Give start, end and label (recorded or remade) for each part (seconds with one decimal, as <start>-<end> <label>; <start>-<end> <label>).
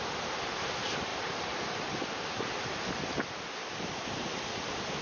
0.0-1.1 remade; 1.1-4.1 recorded; 4.1-5.0 remade